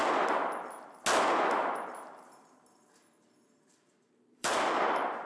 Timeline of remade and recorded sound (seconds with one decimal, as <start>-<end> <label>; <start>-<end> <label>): 0.0-0.7 remade; 0.7-1.6 recorded; 1.6-4.8 remade; 4.8-5.3 recorded